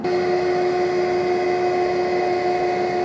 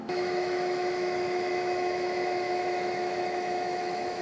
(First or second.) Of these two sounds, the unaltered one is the first